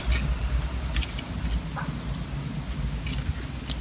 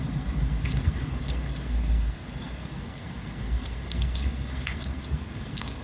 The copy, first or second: second